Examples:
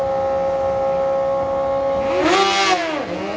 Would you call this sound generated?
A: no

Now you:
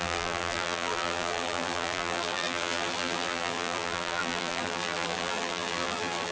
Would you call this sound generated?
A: yes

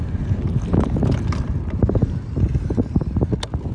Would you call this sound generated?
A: no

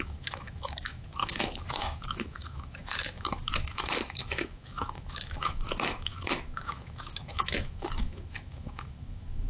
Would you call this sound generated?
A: yes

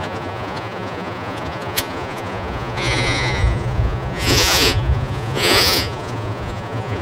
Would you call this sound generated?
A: yes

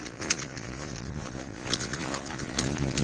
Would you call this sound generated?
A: yes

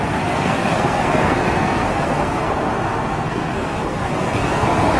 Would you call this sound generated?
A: yes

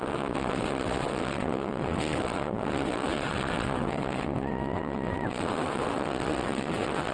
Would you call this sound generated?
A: yes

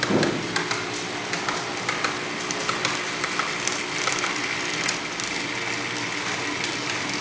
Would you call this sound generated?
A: no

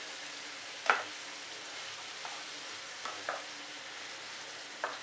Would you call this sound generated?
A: no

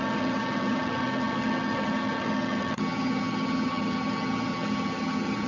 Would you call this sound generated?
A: yes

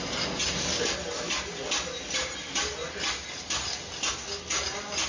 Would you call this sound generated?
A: no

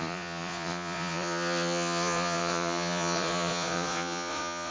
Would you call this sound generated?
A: yes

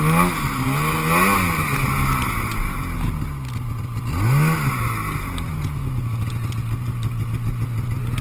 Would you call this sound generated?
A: no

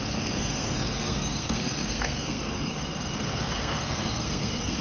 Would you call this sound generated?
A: yes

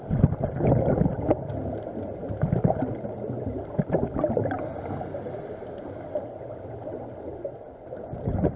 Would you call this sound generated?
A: no